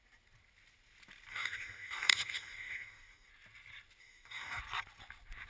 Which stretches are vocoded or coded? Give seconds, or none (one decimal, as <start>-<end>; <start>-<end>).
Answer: 1.3-3.3; 4.0-4.6